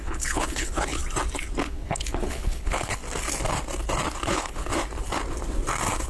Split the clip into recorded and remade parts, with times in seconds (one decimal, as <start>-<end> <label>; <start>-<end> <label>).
0.0-1.0 remade; 1.0-1.6 recorded; 1.6-3.0 remade; 3.0-4.3 recorded; 4.3-4.7 remade; 4.7-6.1 recorded